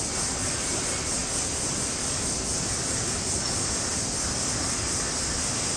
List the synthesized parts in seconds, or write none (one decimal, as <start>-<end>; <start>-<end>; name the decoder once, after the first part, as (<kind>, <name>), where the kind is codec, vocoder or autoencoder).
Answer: none